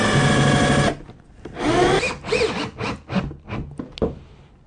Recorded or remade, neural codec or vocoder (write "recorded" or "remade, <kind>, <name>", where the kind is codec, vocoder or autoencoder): recorded